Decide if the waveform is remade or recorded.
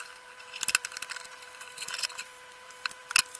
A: remade